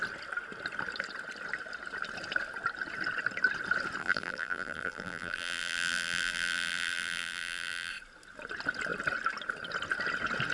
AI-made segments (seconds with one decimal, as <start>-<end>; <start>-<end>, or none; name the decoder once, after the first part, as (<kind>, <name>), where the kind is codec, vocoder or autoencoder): 4.0-7.9 (vocoder, BigVGAN v2)